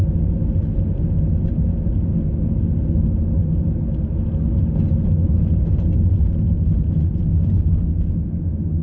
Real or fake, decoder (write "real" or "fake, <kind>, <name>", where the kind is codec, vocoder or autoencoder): real